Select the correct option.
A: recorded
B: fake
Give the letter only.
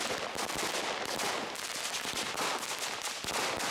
A